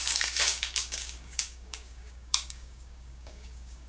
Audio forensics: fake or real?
fake